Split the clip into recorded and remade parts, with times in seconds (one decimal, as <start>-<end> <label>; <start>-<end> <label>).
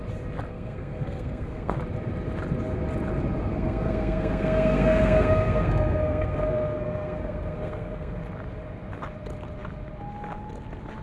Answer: 0.0-0.5 recorded; 0.5-1.8 remade; 1.8-3.5 recorded; 3.5-8.2 remade; 8.2-11.0 recorded